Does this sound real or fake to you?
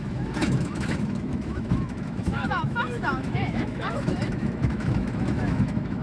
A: fake